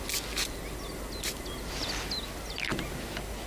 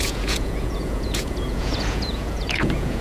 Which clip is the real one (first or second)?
first